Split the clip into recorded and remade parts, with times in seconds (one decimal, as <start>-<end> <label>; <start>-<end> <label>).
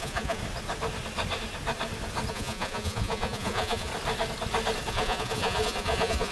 0.0-0.4 remade; 0.4-2.3 recorded; 2.3-3.9 remade; 3.9-4.9 recorded; 4.9-6.3 remade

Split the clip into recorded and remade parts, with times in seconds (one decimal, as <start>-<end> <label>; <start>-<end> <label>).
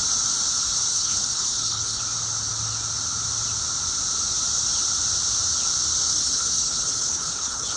0.0-0.9 recorded; 0.9-2.0 remade; 2.0-6.1 recorded; 6.1-7.8 remade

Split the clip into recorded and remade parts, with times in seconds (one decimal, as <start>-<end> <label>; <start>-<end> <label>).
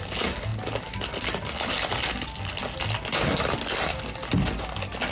0.0-5.1 recorded